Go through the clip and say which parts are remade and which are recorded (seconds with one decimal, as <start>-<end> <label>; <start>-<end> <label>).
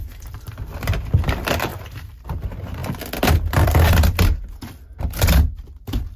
0.0-1.7 remade; 1.7-2.2 recorded; 2.2-2.8 remade; 2.8-5.0 recorded; 5.0-6.2 remade